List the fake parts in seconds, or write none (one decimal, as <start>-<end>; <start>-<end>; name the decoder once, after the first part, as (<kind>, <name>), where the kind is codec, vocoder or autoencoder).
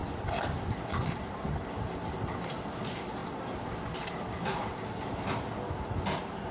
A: none